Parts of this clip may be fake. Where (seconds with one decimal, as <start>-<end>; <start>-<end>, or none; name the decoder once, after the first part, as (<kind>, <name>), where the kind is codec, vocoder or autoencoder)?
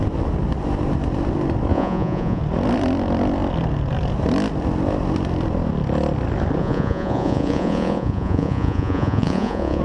1.7-2.4 (vocoder, Vocos); 6.6-9.8